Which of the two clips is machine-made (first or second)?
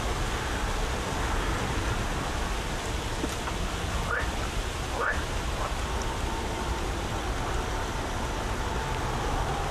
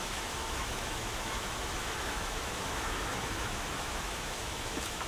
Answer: second